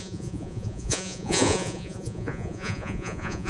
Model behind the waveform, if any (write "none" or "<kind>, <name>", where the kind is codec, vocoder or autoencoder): vocoder, Vocos